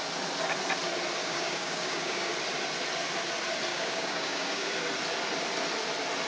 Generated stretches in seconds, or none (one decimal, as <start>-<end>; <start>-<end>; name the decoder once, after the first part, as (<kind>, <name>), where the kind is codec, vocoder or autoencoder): 1.2-2.3 (codec, DAC); 3.7-4.7